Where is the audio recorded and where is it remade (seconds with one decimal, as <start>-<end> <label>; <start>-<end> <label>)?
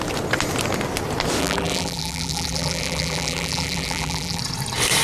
0.0-1.4 recorded; 1.4-4.4 remade; 4.4-5.0 recorded